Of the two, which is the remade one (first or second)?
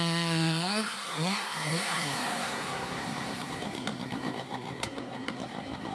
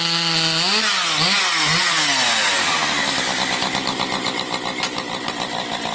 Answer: first